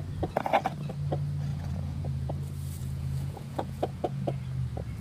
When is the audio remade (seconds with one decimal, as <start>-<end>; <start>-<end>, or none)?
1.5-2.3; 2.8-4.4